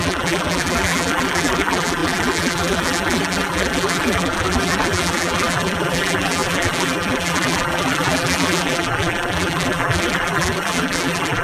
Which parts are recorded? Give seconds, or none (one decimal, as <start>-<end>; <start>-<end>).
none